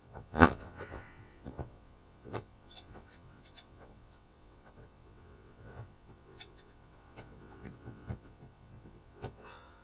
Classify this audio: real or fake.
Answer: fake